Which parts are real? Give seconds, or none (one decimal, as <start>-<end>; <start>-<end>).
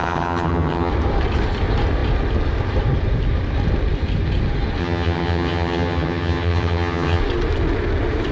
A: 0.9-4.8; 7.2-8.3